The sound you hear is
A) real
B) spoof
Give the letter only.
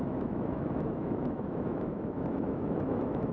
B